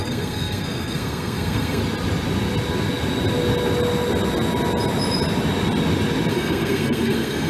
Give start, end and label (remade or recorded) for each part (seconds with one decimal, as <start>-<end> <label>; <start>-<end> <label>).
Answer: 0.0-1.8 remade; 1.8-6.3 recorded; 6.3-7.5 remade